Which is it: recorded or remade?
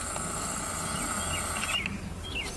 recorded